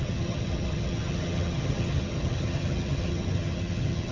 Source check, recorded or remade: remade